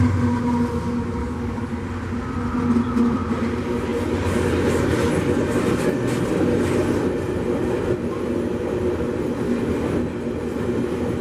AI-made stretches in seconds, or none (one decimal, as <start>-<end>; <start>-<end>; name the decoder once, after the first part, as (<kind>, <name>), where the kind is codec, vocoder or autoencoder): 1.2-1.8 (codec, DAC)